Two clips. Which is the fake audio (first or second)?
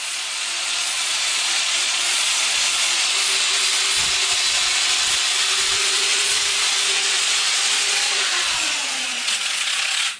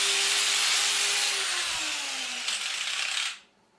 first